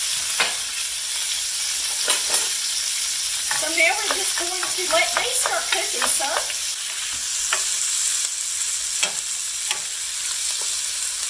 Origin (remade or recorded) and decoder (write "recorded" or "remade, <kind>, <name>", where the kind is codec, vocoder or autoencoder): recorded